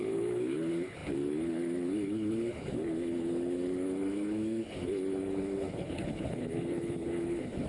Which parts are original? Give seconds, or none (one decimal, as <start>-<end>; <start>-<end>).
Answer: none